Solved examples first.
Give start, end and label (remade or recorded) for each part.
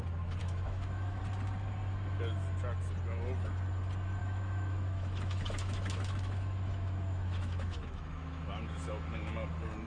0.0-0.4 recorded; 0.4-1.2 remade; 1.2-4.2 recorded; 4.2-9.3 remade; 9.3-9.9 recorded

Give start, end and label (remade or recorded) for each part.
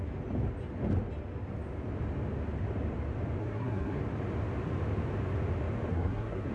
0.0-3.4 recorded; 3.4-4.0 remade; 4.0-5.9 recorded; 5.9-6.5 remade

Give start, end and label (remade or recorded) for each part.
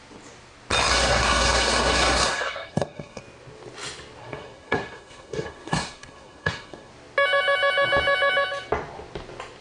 0.0-0.9 recorded; 0.9-3.2 remade; 3.2-4.2 recorded; 4.2-6.9 remade; 6.9-9.6 recorded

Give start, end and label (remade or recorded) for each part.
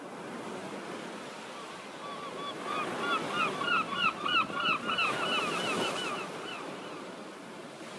0.0-8.0 recorded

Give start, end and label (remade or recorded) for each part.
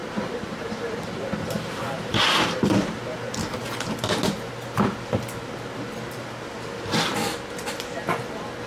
0.0-3.3 remade; 3.3-8.7 recorded